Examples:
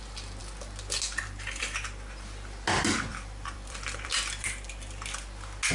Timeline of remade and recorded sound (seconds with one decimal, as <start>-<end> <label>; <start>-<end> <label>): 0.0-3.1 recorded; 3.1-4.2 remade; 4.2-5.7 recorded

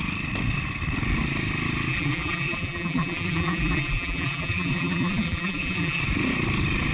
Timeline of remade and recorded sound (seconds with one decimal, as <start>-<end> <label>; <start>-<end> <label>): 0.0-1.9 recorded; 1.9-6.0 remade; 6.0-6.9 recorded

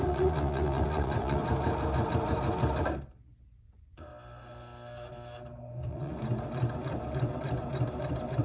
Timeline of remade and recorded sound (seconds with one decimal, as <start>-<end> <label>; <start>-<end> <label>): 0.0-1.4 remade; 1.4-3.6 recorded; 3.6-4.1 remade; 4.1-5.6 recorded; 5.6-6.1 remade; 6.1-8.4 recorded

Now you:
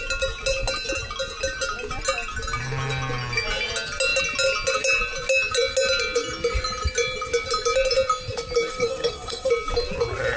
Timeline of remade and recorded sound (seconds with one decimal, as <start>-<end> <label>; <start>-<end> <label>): 0.0-8.7 recorded; 8.7-9.5 remade; 9.5-10.4 recorded

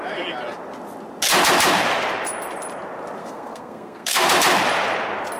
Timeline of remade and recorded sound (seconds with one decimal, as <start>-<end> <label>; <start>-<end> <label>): 0.0-3.2 recorded; 3.2-4.3 remade; 4.3-5.4 recorded